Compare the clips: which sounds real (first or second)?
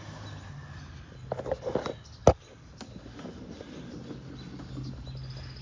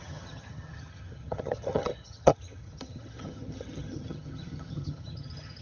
first